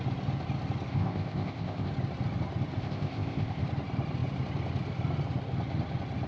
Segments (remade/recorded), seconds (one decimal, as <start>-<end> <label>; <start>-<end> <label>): 0.0-0.9 recorded; 0.9-1.9 remade; 1.9-2.8 recorded; 2.8-3.6 remade; 3.6-6.3 recorded